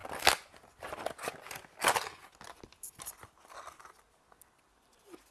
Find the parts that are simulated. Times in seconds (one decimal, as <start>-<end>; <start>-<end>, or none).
none